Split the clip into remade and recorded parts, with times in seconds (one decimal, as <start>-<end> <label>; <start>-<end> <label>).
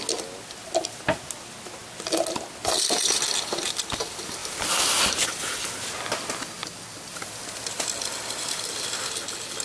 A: 0.0-6.6 recorded; 6.6-8.7 remade; 8.7-9.6 recorded